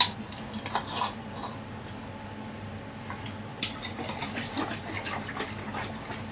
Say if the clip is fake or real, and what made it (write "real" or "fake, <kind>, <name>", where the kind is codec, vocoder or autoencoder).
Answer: real